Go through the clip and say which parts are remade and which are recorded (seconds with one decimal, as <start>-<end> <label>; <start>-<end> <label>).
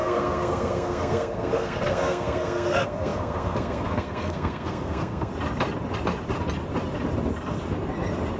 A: 0.0-5.3 remade; 5.3-8.4 recorded